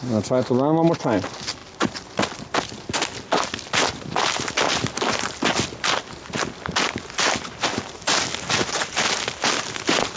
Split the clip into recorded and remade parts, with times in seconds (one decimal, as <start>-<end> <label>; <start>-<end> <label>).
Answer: 0.0-10.2 recorded